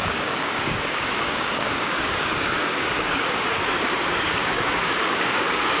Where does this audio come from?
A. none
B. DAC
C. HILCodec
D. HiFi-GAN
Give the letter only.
B